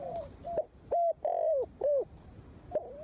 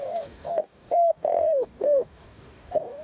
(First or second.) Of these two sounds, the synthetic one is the second